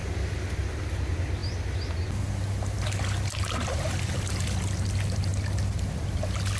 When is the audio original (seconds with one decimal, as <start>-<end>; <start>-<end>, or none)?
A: 0.0-6.6